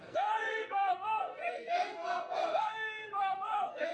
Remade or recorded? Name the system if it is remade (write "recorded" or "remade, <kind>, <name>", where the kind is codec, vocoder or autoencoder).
remade, codec, SNAC